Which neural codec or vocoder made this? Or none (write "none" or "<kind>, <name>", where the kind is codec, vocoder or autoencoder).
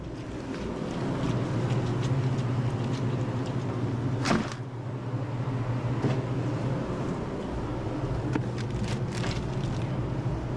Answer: none